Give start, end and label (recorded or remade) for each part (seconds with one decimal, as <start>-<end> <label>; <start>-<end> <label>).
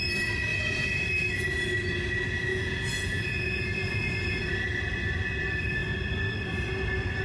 0.0-0.5 recorded; 0.5-1.0 remade; 1.0-2.5 recorded; 2.5-4.4 remade; 4.4-7.2 recorded